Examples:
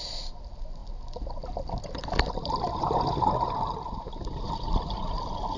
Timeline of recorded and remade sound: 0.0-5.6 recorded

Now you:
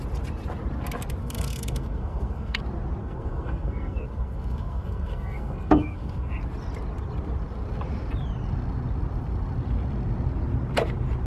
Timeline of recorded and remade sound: 0.0-1.2 recorded; 1.2-2.6 remade; 2.6-3.0 recorded; 3.0-6.3 remade; 6.3-11.3 recorded

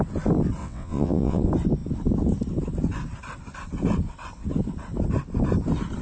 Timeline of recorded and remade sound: 0.0-0.6 recorded; 0.6-1.4 remade; 1.4-6.0 recorded

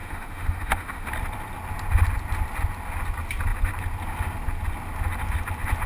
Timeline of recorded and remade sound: 0.0-1.1 remade; 1.1-5.9 recorded

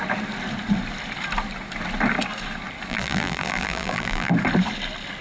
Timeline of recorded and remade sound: 0.0-2.9 recorded; 2.9-4.3 remade; 4.3-5.2 recorded

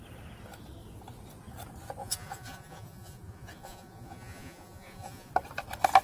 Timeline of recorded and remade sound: 0.0-2.0 recorded; 2.0-5.3 remade; 5.3-6.0 recorded

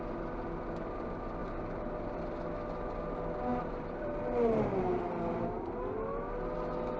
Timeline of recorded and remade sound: 0.0-1.4 recorded; 1.4-2.2 remade; 2.2-3.5 recorded; 3.5-4.8 remade; 4.8-7.0 recorded

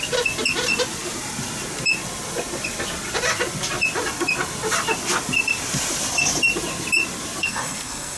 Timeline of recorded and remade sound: 0.0-7.4 recorded; 7.4-8.2 remade